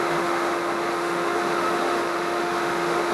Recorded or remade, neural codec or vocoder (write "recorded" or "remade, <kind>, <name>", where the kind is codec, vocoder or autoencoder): remade, autoencoder, DAC-VAE